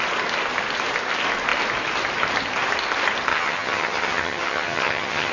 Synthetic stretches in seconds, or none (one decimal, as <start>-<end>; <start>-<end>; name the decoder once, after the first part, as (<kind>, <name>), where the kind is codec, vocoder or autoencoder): 3.3-5.3 (vocoder, HiFi-GAN)